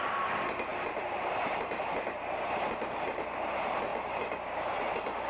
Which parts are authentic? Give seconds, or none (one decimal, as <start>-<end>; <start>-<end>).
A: 0.0-5.3